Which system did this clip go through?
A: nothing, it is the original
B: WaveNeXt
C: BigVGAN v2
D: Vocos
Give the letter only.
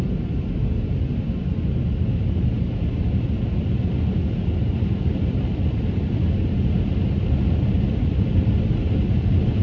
A